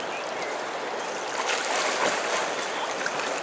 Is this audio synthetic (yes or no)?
no